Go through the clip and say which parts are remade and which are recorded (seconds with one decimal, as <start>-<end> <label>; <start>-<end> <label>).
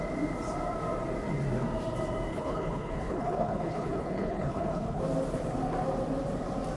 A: 0.0-2.3 recorded; 2.3-5.0 remade; 5.0-6.8 recorded